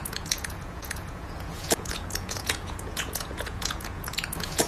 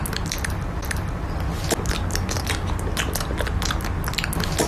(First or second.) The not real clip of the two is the first